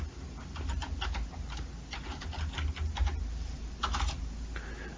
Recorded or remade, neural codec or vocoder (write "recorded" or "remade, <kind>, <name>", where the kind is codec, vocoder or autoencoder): remade, vocoder, BigVGAN v2